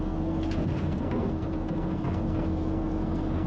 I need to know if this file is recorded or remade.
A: remade